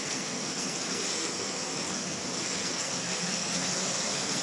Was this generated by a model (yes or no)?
yes